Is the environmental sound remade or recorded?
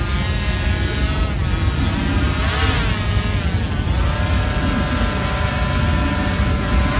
recorded